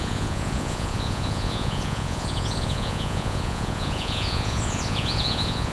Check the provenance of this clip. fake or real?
fake